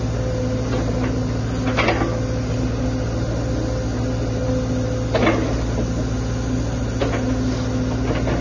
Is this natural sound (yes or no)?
yes